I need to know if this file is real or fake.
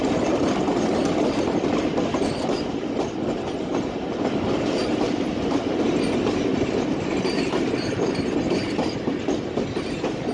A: real